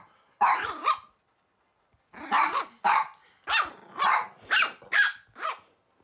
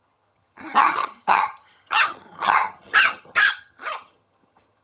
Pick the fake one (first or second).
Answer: second